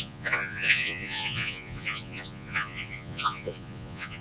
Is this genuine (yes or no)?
no